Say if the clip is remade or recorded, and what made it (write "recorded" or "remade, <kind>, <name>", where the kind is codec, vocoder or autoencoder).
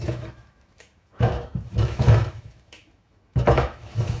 remade, autoencoder, DAC-VAE